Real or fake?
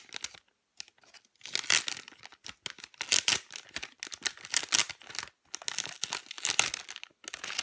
real